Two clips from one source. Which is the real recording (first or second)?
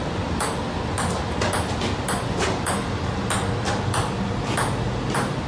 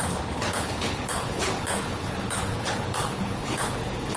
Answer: first